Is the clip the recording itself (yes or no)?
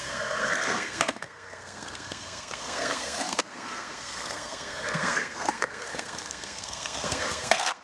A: no